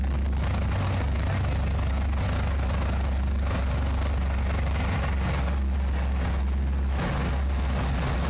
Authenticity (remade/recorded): recorded